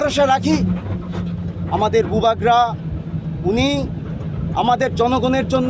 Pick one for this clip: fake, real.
real